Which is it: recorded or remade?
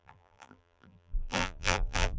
remade